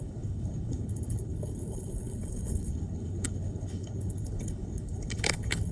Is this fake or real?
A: fake